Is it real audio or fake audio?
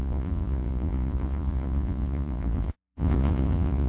fake